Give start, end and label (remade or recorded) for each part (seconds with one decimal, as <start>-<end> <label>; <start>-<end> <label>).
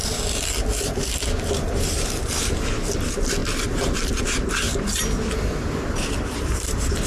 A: 0.0-0.5 recorded; 0.5-3.4 remade; 3.4-4.2 recorded; 4.2-7.1 remade